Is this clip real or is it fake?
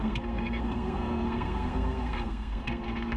fake